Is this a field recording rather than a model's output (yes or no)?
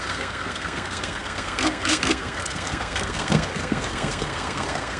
no